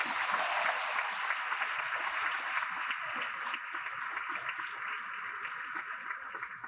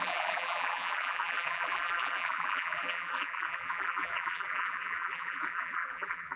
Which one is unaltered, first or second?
first